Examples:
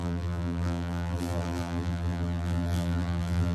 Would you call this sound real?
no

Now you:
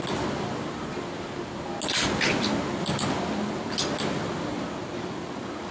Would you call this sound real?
yes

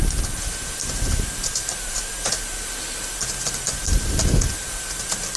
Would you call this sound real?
yes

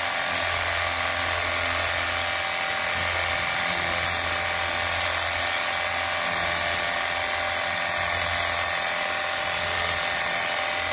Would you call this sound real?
yes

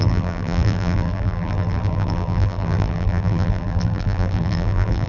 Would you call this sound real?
no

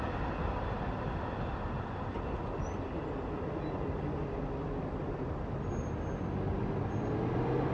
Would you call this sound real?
yes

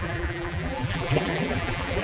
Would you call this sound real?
no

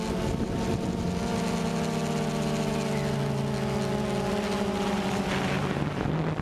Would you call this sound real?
yes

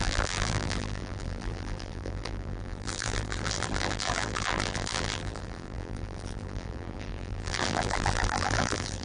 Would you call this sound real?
no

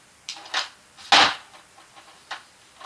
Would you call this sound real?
yes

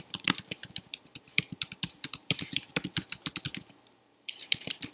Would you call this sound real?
no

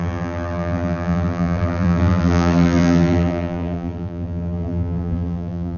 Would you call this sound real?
no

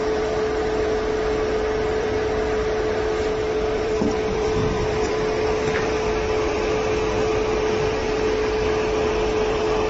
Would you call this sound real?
no